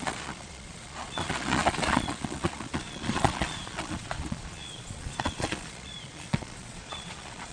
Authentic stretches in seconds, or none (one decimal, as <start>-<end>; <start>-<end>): none